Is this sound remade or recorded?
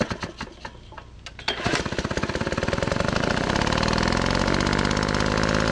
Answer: recorded